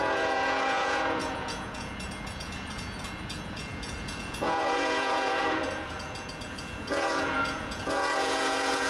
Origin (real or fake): fake